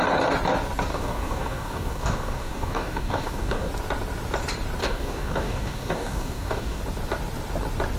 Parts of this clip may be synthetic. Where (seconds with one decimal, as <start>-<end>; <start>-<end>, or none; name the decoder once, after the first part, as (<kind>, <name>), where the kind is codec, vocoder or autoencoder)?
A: 0.9-3.7 (codec, DAC); 4.8-6.8